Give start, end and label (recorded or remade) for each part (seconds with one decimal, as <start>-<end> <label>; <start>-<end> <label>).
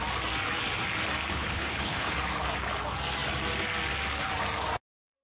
0.0-1.3 recorded; 1.3-2.1 remade; 2.1-5.2 recorded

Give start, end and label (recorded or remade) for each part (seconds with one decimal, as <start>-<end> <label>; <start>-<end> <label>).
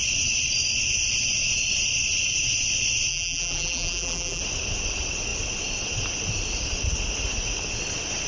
0.0-3.1 recorded; 3.1-4.4 remade; 4.4-8.3 recorded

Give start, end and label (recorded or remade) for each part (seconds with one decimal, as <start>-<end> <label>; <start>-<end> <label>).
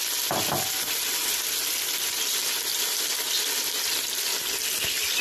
0.0-5.2 recorded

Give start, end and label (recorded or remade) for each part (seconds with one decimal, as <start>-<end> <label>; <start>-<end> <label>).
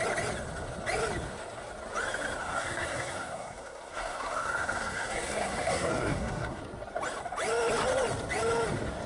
0.0-2.4 recorded; 2.4-6.6 remade; 6.6-9.1 recorded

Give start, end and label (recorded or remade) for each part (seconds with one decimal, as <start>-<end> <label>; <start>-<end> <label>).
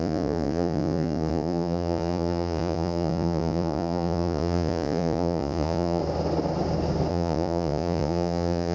0.0-6.0 remade; 6.0-7.1 recorded; 7.1-8.7 remade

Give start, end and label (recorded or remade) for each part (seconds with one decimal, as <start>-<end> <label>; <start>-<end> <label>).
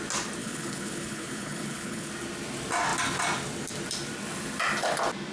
0.0-0.4 recorded; 0.4-2.1 remade; 2.1-5.3 recorded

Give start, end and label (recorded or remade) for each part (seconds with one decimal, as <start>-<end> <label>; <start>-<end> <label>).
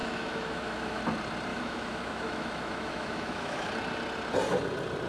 0.0-1.0 remade; 1.0-1.5 recorded; 1.5-3.7 remade; 3.7-5.1 recorded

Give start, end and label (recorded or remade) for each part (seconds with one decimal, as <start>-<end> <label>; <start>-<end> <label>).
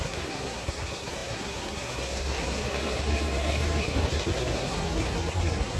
0.0-5.8 remade